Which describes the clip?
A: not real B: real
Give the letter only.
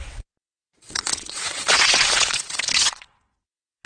A